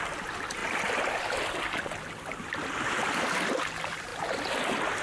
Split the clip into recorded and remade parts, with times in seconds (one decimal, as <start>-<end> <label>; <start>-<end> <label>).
0.0-5.0 recorded